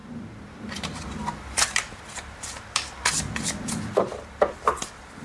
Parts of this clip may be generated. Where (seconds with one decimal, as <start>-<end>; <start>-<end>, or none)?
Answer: 0.0-5.2